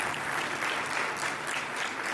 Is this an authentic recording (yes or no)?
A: yes